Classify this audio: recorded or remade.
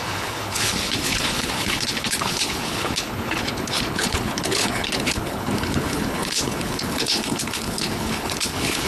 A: remade